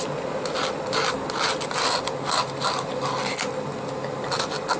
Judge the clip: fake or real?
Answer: real